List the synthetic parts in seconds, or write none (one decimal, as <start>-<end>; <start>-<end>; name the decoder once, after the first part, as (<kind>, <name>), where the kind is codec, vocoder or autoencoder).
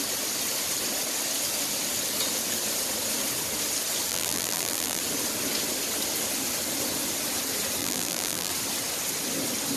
4.1-5.0 (vocoder, BigVGAN v2); 7.8-8.5